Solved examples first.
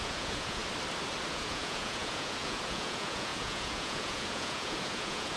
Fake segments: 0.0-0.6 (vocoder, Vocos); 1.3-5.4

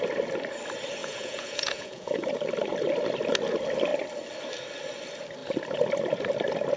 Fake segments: 1.0-2.3 (vocoder, Vocos)

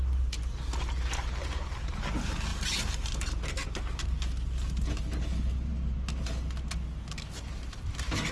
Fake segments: none

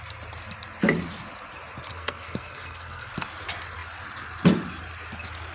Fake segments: 1.9-3.1 (codec, SNAC)

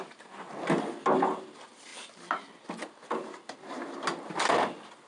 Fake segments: none

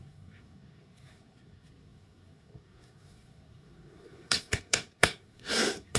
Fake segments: 0.0-6.0 (codec, SNAC)